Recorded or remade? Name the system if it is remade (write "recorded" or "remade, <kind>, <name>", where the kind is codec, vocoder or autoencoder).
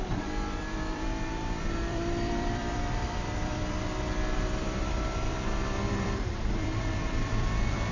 remade, vocoder, BigVGAN v2